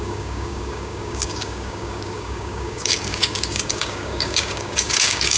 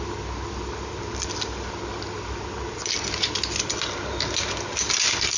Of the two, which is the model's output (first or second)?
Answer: first